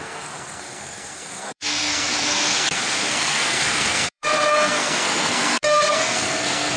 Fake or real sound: fake